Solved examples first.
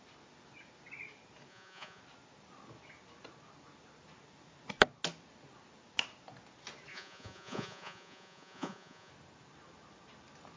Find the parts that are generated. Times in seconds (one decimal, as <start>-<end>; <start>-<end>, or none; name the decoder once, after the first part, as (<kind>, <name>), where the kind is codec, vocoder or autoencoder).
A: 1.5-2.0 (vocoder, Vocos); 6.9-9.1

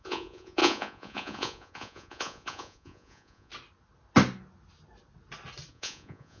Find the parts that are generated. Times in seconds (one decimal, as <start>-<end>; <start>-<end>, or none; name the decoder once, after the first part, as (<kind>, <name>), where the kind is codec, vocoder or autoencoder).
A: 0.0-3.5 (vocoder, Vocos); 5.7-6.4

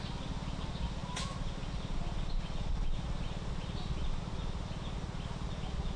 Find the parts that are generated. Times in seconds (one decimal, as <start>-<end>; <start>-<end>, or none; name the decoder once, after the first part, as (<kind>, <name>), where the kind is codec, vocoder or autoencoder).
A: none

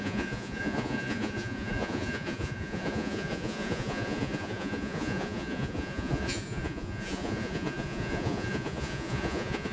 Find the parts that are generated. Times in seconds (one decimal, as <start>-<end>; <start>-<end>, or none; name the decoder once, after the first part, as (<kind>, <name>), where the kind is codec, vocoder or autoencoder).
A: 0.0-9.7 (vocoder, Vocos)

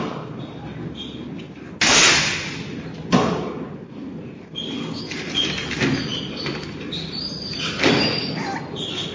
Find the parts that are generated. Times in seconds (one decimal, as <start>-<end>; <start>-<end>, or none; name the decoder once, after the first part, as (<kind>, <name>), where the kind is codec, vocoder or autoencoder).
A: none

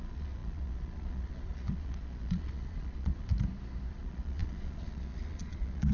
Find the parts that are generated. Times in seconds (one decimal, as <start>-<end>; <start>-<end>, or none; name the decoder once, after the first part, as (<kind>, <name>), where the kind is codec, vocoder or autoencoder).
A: 0.0-3.3 (vocoder, Vocos); 3.9-5.9

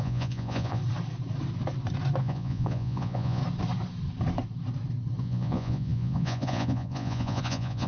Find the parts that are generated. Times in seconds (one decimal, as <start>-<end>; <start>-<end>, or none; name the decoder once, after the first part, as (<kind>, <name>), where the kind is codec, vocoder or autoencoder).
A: 0.0-0.8 (vocoder, Vocos); 2.2-3.4; 5.2-7.9

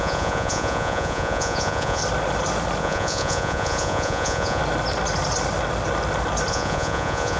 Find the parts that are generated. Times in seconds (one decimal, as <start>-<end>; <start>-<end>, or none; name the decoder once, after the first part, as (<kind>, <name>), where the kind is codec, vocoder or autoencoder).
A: 0.0-2.0 (vocoder, Vocos); 2.8-4.6; 6.5-7.4